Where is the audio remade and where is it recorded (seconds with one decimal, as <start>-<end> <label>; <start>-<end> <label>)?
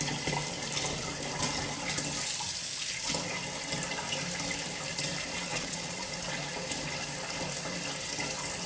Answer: 0.0-5.5 recorded; 5.5-6.1 remade; 6.1-8.7 recorded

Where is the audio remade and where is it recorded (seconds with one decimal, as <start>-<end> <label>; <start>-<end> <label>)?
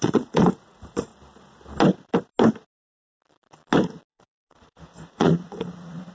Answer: 0.0-1.1 remade; 1.1-4.1 recorded; 4.1-6.1 remade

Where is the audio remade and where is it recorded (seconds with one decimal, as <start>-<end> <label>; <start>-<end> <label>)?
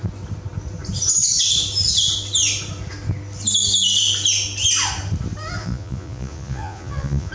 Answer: 0.0-5.6 recorded; 5.6-7.3 remade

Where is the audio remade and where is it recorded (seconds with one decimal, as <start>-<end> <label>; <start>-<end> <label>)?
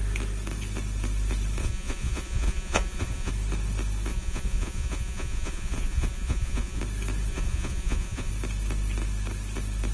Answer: 0.0-1.6 recorded; 1.6-3.3 remade; 3.3-4.1 recorded; 4.1-6.8 remade; 6.8-7.3 recorded; 7.3-8.3 remade; 8.3-9.9 recorded